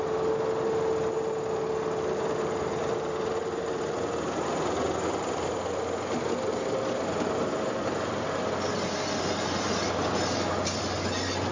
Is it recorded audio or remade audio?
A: recorded